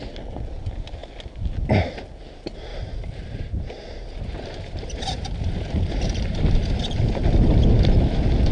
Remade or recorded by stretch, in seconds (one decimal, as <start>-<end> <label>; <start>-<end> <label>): 0.0-2.7 recorded; 2.7-7.8 remade; 7.8-8.5 recorded